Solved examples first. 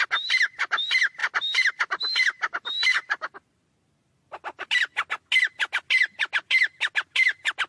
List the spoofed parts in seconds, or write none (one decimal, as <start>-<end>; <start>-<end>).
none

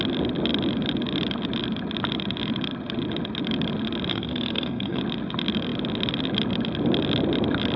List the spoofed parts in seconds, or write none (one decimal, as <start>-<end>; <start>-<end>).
4.1-5.0

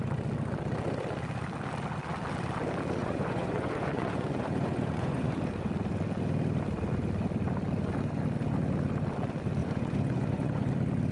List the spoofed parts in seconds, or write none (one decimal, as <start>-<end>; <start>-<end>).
3.0-5.4; 9.6-10.7

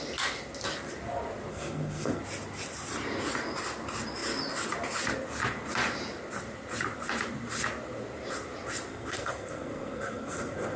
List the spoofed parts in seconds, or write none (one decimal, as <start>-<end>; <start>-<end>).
1.5-2.2; 8.9-10.8